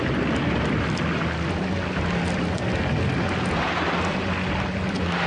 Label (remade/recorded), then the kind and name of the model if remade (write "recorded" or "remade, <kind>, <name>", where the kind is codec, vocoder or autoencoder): recorded